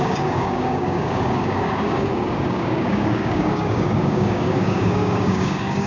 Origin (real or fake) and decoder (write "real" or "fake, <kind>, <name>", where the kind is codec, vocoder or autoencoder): fake, codec, DAC